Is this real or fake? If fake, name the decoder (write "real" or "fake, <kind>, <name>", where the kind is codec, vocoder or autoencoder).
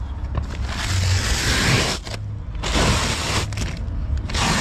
real